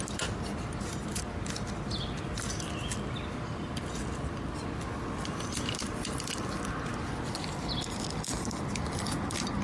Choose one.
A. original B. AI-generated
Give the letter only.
A